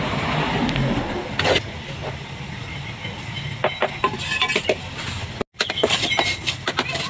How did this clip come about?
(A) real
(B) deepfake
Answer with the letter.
A